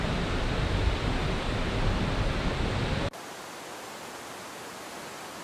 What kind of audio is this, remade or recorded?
recorded